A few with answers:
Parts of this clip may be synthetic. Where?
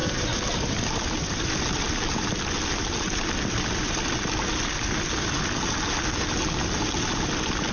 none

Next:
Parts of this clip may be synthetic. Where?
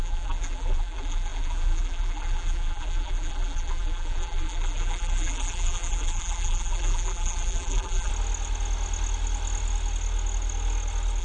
0.0-8.1 (vocoder, BigVGAN v2)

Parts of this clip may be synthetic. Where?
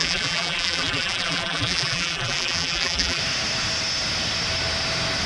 0.0-3.2 (vocoder, BigVGAN v2)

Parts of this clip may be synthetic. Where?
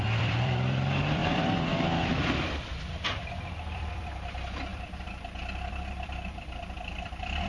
0.0-7.5 (vocoder, BigVGAN v2)